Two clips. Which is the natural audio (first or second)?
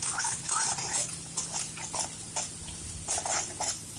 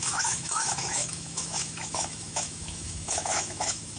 first